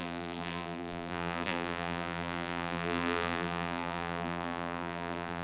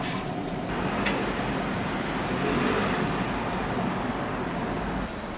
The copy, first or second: first